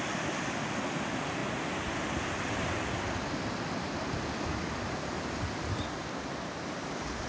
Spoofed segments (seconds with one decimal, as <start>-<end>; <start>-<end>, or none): none